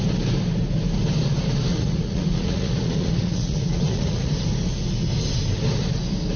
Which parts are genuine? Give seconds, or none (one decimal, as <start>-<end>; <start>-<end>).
0.0-1.7; 4.3-6.4